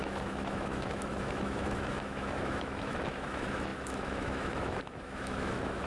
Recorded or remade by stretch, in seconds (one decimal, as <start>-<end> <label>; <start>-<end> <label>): 0.0-5.9 remade